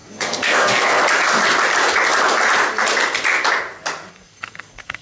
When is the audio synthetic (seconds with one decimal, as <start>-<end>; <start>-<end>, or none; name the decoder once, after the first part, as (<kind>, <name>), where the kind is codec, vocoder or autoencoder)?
0.0-1.0 (codec, SNAC); 4.1-5.0